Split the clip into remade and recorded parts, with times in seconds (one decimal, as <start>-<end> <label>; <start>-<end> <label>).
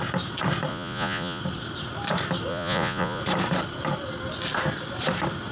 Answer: 0.0-0.7 recorded; 0.7-1.4 remade; 1.4-2.5 recorded; 2.5-3.2 remade; 3.2-5.5 recorded